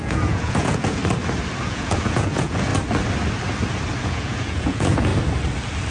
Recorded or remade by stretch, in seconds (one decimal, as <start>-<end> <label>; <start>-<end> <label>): 0.0-1.0 remade; 1.0-1.6 recorded; 1.6-2.7 remade; 2.7-4.0 recorded; 4.0-5.1 remade; 5.1-5.9 recorded